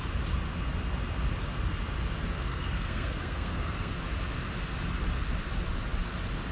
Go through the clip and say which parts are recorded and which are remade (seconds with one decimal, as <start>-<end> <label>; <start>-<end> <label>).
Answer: 0.0-2.5 recorded; 2.5-3.9 remade; 3.9-6.5 recorded